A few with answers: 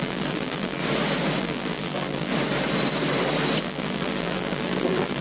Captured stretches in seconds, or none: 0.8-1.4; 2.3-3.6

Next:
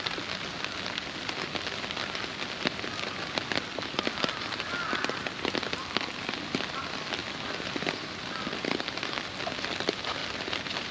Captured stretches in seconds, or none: 0.0-10.9

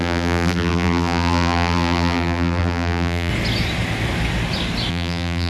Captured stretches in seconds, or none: 3.3-4.9

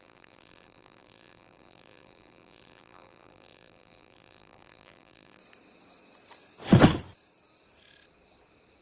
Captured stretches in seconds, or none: 5.4-8.8